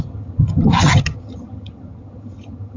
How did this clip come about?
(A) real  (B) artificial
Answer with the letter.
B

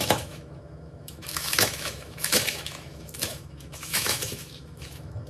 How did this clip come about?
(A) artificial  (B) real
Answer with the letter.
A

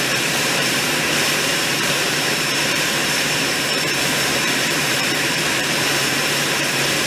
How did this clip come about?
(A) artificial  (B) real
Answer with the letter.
A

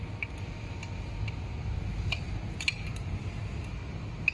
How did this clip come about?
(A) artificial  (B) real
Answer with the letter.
B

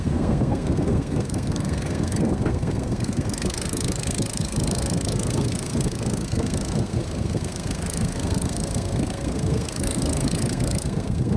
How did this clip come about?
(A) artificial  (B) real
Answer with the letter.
A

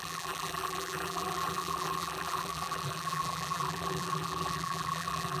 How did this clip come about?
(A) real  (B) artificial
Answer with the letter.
B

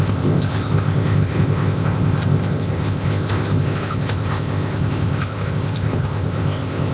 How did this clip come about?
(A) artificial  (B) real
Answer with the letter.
A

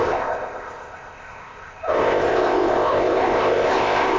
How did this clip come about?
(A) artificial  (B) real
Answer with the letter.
A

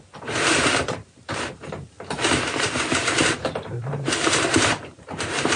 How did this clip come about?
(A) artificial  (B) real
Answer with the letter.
A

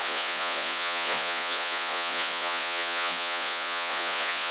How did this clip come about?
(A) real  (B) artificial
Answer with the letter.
B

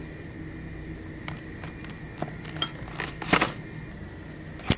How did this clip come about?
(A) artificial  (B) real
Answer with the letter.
B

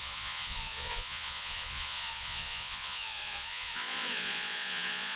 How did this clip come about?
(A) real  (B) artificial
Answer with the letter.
B